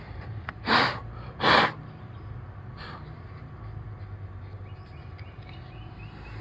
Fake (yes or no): no